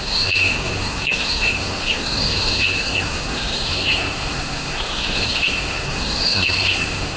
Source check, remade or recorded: remade